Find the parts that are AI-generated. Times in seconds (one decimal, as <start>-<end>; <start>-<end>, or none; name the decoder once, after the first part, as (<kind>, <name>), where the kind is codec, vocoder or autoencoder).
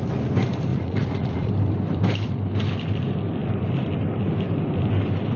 0.7-1.5 (vocoder, Vocos)